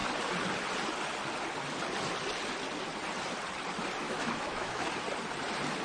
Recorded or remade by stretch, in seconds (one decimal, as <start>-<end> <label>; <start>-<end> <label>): 0.0-4.0 recorded; 4.0-4.9 remade; 4.9-5.8 recorded